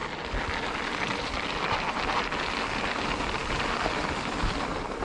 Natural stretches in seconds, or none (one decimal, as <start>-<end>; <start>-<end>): 0.0-5.0